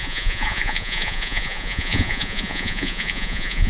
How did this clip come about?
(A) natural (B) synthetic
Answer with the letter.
B